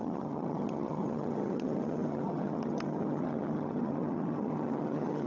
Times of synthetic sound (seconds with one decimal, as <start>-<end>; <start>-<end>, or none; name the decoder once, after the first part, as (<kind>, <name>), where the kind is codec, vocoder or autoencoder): 0.0-5.3 (vocoder, HiFi-GAN)